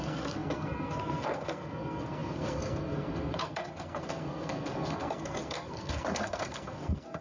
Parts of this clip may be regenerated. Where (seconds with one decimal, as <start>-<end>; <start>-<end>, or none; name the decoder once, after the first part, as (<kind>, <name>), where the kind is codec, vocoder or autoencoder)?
0.0-7.2 (codec, SNAC)